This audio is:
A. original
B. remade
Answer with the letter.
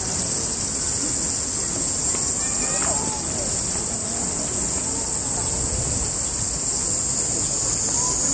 A